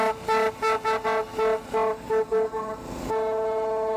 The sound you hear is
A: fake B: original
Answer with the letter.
B